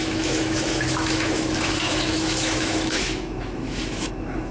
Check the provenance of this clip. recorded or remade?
remade